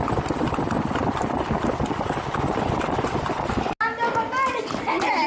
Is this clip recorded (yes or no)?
yes